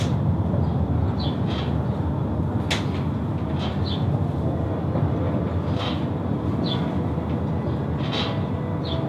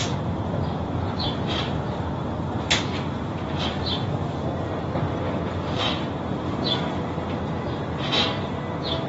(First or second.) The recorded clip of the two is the first